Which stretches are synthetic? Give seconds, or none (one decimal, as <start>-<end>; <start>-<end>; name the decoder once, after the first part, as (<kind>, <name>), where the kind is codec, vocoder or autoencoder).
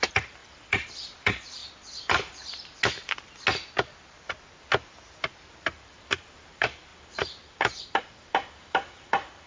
0.0-1.6 (vocoder, BigVGAN v2); 5.5-9.5